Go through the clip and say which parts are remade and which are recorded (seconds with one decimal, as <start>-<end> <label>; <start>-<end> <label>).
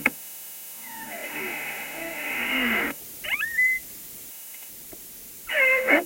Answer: 0.0-3.0 remade; 3.0-4.3 recorded; 4.3-4.7 remade; 4.7-5.5 recorded; 5.5-6.1 remade